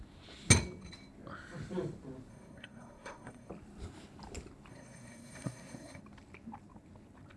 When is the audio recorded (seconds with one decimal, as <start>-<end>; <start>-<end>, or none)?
0.0-2.3; 3.5-4.7; 6.0-7.4